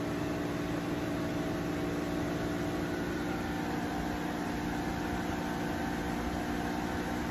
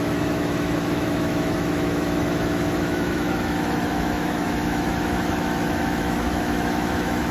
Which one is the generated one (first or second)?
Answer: second